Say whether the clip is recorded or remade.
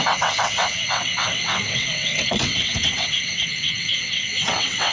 remade